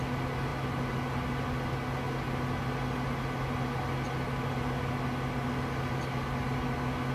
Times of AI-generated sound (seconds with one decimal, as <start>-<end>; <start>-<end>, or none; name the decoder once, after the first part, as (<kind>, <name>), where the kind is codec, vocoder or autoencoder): none

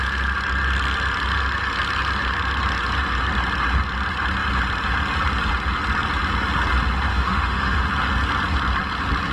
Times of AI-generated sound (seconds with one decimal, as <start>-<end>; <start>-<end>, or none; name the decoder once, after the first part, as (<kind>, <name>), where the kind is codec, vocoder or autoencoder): 7.1-7.8 (autoencoder, DAC-VAE)